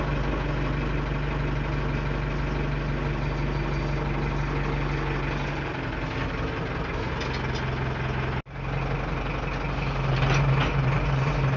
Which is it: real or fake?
real